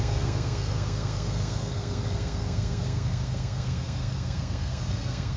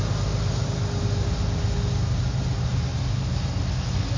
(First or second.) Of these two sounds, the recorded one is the second